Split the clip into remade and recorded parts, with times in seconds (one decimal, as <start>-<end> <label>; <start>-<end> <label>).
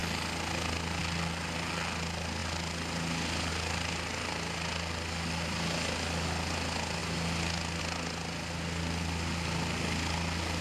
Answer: 0.0-10.6 recorded